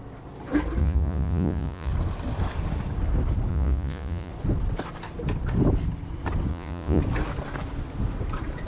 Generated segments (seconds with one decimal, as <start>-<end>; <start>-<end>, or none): 0.8-1.9; 3.5-4.3; 6.5-7.0

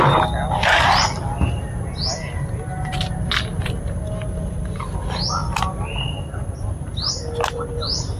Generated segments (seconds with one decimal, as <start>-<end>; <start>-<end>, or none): none

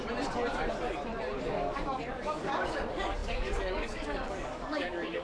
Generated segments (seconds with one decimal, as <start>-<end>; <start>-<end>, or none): 1.4-5.2

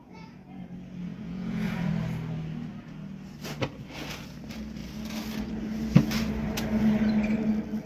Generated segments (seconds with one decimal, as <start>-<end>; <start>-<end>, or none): 0.0-0.6; 1.1-1.9